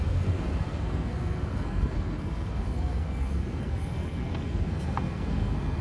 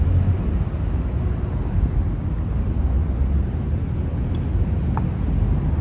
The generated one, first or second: first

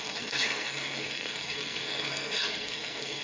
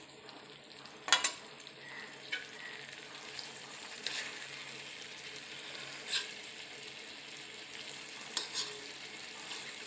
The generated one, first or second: first